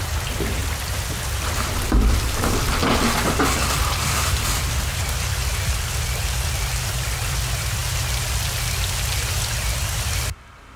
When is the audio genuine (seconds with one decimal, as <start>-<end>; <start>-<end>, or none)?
7.8-9.2